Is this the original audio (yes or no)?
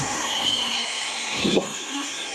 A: no